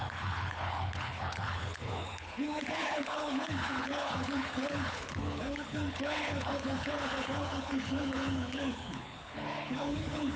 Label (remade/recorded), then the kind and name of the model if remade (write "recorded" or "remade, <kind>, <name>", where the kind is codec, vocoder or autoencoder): remade, codec, HILCodec